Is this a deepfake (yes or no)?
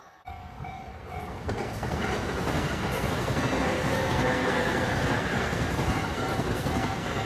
yes